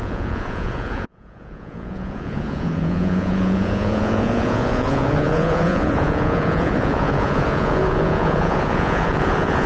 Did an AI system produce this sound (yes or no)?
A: yes